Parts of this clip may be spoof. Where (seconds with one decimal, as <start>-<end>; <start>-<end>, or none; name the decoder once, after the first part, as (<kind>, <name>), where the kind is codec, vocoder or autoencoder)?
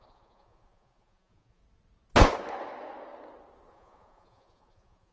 0.0-1.6 (vocoder, Vocos); 3.7-5.1